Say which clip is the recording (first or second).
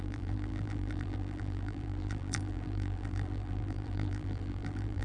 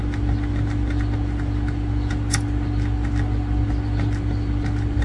second